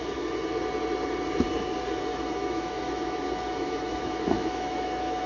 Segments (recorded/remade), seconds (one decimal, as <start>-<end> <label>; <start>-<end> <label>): 0.0-2.1 recorded; 2.1-5.3 remade